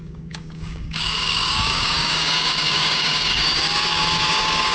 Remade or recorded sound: remade